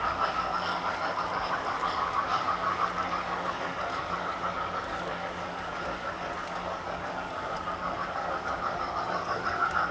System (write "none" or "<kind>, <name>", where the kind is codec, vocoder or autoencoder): codec, DAC